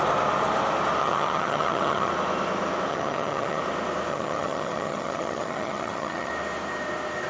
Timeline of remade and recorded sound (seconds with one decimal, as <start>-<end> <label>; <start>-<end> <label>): 0.0-1.0 recorded; 1.0-2.1 remade; 2.1-2.9 recorded; 2.9-3.6 remade; 3.6-4.1 recorded; 4.1-6.3 remade; 6.3-7.3 recorded